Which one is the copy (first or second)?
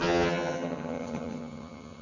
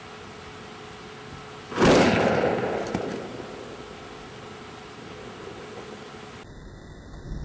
first